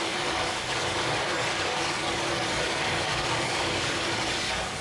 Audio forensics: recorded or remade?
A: remade